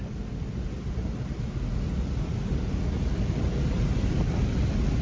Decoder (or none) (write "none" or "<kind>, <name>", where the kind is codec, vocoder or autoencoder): none